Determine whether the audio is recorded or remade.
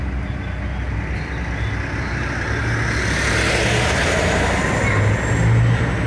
recorded